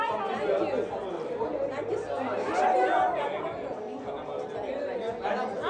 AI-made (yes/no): no